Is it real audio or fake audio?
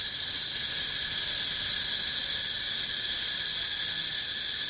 real